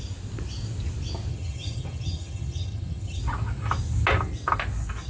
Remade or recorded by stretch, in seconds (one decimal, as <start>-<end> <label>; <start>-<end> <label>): 0.0-1.3 recorded; 1.3-3.2 remade; 3.2-5.1 recorded